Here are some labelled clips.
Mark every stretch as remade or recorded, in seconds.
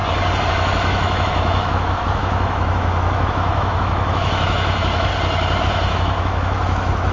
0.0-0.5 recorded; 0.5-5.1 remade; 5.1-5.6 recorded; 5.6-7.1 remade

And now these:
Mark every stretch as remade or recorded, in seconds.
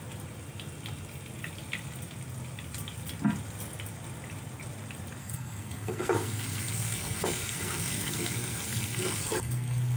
0.0-5.2 recorded; 5.2-10.0 remade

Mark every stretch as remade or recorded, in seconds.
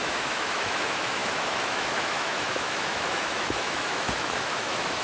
0.0-5.0 remade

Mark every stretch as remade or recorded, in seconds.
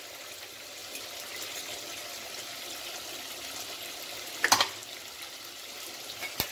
0.0-6.5 recorded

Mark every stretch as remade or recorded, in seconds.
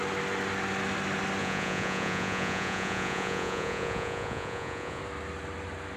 0.0-1.4 recorded; 1.4-5.0 remade; 5.0-6.0 recorded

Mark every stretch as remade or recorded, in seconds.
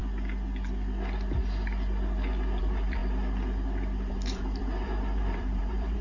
0.0-2.6 recorded; 2.6-3.0 remade; 3.0-4.1 recorded; 4.1-6.0 remade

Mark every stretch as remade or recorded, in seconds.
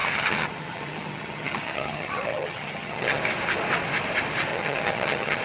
0.0-3.2 remade; 3.2-4.5 recorded; 4.5-5.4 remade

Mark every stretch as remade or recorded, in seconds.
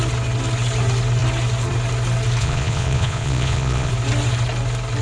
0.0-2.4 recorded; 2.4-3.9 remade; 3.9-5.0 recorded